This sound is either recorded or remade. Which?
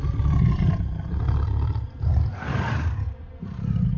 recorded